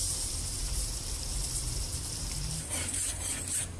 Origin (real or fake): fake